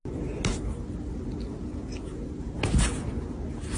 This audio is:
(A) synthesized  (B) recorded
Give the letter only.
B